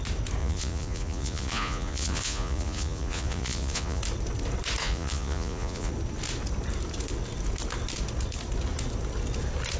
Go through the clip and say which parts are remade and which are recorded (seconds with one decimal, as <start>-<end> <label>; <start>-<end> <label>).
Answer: 0.0-0.4 recorded; 0.4-4.0 remade; 4.0-4.8 recorded; 4.8-5.9 remade; 5.9-9.8 recorded